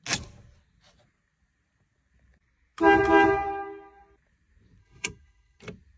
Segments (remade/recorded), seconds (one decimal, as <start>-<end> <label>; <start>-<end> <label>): 0.0-4.8 recorded; 4.8-5.6 remade; 5.6-6.0 recorded